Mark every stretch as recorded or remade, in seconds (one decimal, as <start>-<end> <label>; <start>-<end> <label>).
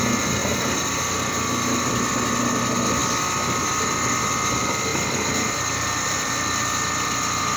0.0-4.9 recorded; 4.9-6.6 remade; 6.6-7.6 recorded